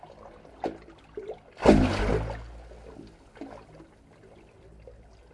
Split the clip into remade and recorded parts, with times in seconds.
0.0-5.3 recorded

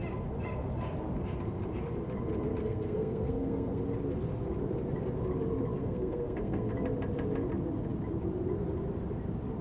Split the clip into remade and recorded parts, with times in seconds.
0.0-2.6 recorded; 2.6-3.8 remade; 3.8-5.8 recorded; 5.8-6.7 remade; 6.7-9.6 recorded

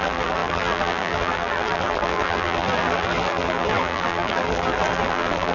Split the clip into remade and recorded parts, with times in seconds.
0.0-5.5 remade

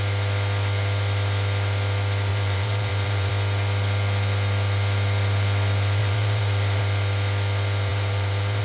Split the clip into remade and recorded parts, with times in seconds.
0.0-2.3 recorded; 2.3-3.3 remade; 3.3-6.0 recorded; 6.0-6.8 remade; 6.8-7.9 recorded; 7.9-8.6 remade

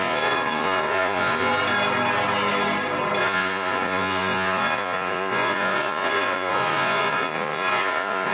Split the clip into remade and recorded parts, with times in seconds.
0.0-1.5 remade; 1.5-3.2 recorded; 3.2-8.3 remade

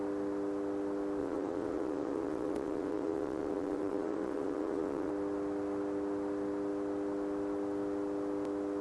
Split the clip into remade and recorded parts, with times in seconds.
0.0-1.2 recorded; 1.2-5.1 remade; 5.1-8.8 recorded

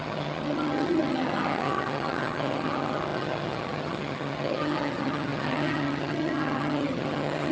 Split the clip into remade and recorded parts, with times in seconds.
0.0-7.5 remade